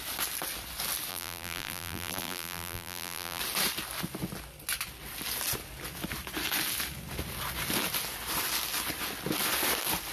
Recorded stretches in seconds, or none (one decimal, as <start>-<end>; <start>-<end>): 0.0-1.1; 3.4-10.1